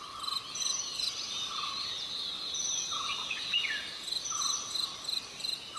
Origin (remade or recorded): recorded